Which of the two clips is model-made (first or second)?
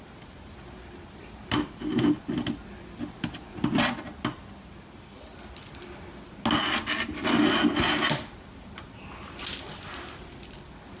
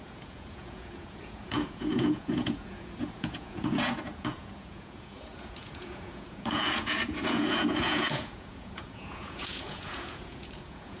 second